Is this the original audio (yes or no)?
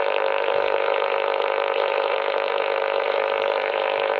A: no